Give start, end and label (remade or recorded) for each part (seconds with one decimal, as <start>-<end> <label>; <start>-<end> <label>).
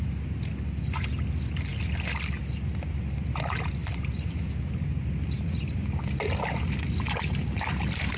0.0-8.2 recorded